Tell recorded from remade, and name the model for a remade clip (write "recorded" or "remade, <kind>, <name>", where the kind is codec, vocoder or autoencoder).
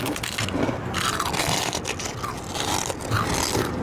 recorded